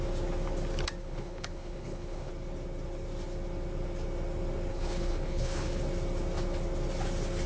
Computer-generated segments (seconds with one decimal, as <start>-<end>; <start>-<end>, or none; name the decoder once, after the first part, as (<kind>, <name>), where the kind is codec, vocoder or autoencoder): 1.0-2.3 (codec, HILCodec); 4.7-5.8